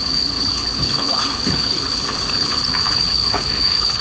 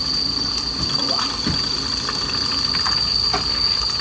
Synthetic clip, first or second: first